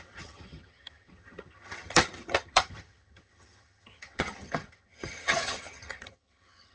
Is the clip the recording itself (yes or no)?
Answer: no